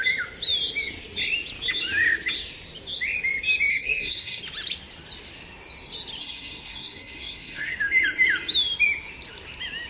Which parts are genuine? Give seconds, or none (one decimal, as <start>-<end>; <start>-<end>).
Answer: 0.0-3.7; 4.4-6.2; 7.7-9.9